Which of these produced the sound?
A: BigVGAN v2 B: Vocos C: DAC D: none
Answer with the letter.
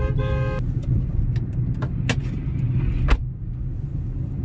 D